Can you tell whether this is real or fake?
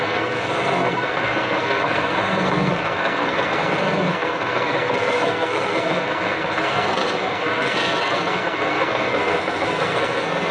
fake